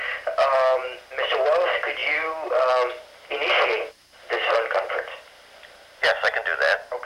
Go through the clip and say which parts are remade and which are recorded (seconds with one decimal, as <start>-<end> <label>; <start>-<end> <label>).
0.0-7.1 recorded